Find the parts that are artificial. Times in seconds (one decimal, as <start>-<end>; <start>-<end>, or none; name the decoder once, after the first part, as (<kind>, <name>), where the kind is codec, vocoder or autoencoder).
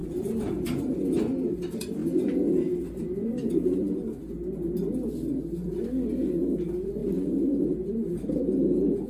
0.0-1.0 (vocoder, BigVGAN v2); 7.0-8.4